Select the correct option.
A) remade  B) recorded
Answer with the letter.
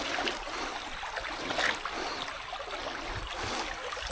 B